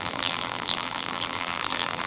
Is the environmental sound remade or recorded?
remade